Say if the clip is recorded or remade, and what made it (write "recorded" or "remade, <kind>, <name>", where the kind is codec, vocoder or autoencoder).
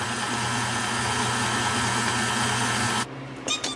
recorded